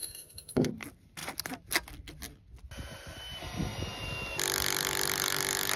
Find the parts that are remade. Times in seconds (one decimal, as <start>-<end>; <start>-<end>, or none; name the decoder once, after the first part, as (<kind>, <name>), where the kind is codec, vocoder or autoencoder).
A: 0.0-0.7 (autoencoder, DAC-VAE)